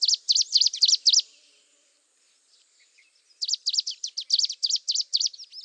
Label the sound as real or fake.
real